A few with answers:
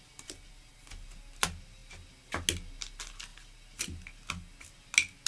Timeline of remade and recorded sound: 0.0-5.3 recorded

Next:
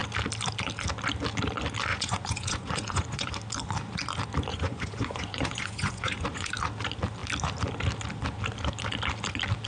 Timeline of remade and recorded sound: 0.0-1.9 recorded; 1.9-3.3 remade; 3.3-4.5 recorded; 4.5-6.5 remade; 6.5-9.7 recorded

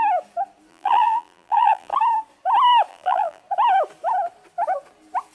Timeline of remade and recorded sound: 0.0-0.7 recorded; 0.7-1.9 remade; 1.9-2.9 recorded; 2.9-3.4 remade; 3.4-5.3 recorded